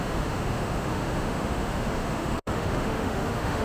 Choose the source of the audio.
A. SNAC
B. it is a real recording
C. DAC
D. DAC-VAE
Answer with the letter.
D